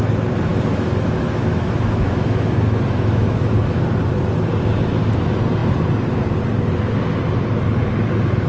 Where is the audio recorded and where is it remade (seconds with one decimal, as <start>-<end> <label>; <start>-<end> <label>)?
0.0-0.5 recorded; 0.5-3.8 remade; 3.8-8.5 recorded